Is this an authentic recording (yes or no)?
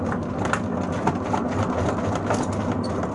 yes